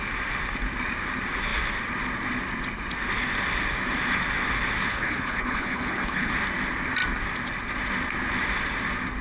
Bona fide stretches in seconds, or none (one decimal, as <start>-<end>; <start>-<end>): 0.0-4.9; 6.3-9.2